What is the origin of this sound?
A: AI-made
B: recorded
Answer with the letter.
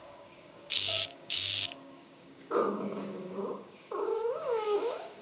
A